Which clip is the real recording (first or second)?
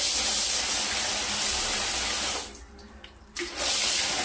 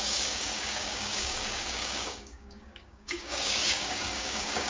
first